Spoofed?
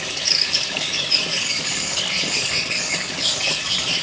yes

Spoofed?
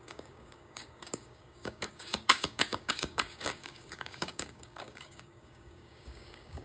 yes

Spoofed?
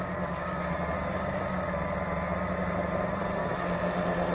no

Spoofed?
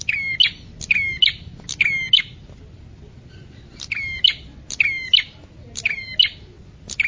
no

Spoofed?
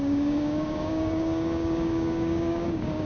yes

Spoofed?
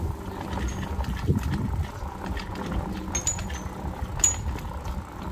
no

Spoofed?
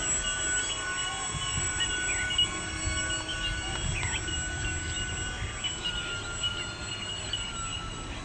no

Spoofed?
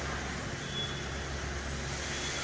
no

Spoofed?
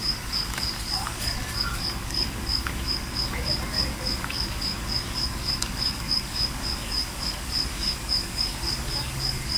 yes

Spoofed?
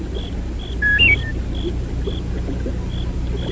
no